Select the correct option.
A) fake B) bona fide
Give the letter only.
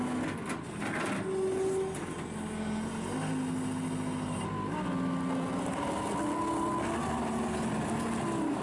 B